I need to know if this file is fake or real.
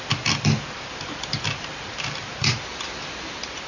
fake